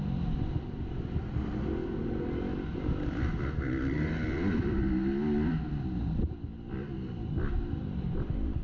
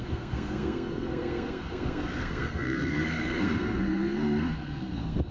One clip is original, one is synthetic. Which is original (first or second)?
first